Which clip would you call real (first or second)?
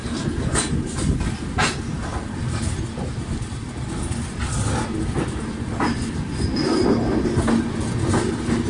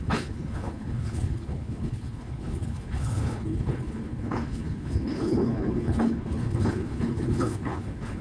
first